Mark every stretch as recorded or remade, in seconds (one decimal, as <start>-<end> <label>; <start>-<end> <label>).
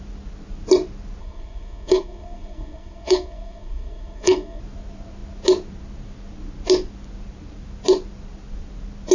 0.0-1.2 recorded; 1.2-4.6 remade; 4.6-9.1 recorded